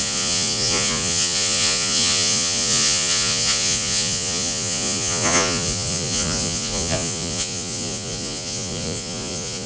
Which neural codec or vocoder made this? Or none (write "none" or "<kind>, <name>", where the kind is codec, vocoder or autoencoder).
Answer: vocoder, Vocos